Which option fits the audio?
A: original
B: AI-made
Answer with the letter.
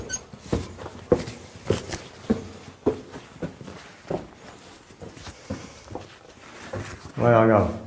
A